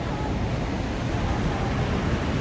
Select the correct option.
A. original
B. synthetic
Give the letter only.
A